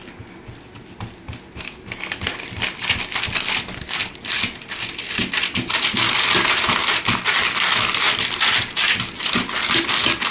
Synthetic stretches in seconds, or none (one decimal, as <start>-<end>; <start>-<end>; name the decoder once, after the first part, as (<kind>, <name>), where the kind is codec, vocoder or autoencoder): none